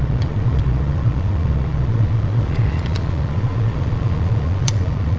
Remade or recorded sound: remade